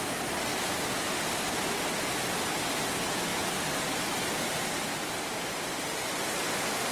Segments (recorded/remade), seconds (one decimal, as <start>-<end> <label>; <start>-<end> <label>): 0.0-3.3 recorded; 3.3-4.7 remade; 4.7-6.9 recorded